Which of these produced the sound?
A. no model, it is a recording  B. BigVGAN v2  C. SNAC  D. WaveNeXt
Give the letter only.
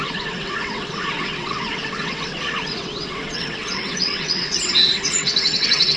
D